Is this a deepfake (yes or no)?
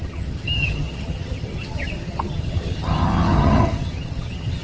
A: yes